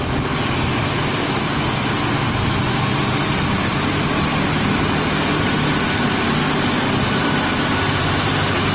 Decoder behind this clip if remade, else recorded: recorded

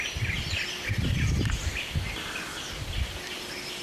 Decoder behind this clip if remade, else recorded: recorded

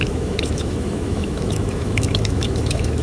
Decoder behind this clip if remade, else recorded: remade, autoencoder, DAC-VAE